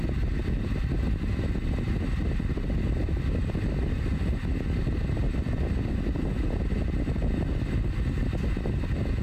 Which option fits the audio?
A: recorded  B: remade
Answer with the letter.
A